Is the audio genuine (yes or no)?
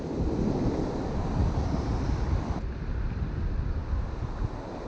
yes